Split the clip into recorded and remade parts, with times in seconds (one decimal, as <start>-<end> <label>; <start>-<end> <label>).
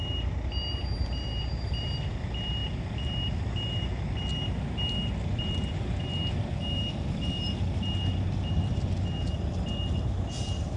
0.0-10.8 recorded